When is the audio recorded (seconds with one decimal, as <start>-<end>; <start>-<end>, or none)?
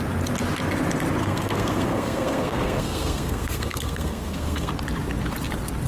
0.0-1.2; 4.7-5.9